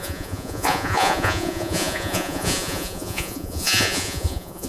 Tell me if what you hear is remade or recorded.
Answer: remade